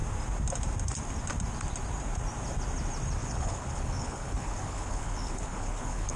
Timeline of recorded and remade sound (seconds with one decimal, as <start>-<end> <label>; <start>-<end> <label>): 0.0-3.2 recorded; 3.2-6.2 remade

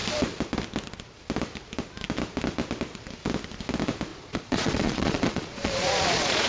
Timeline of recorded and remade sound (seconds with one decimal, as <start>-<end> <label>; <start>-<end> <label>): 0.0-4.1 recorded; 4.1-6.5 remade

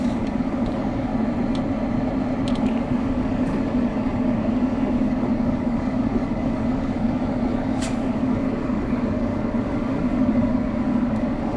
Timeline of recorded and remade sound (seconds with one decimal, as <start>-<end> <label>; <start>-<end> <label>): 0.0-1.1 remade; 1.1-2.6 recorded; 2.6-11.6 remade

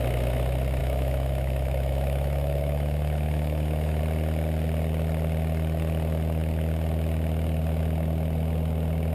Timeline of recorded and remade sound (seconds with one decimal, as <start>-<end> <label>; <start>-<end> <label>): 0.0-0.8 recorded; 0.8-4.0 remade; 4.0-9.1 recorded

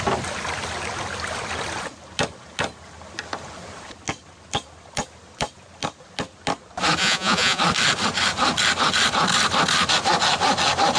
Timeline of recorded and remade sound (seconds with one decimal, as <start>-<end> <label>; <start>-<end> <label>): 0.0-7.0 recorded; 7.0-7.6 remade; 7.6-11.0 recorded